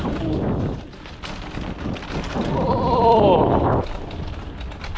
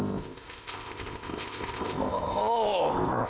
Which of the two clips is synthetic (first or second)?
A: second